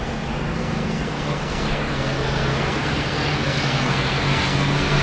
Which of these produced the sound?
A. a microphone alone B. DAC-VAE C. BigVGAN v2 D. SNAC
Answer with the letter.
D